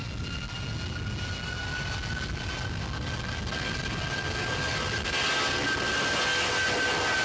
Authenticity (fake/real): real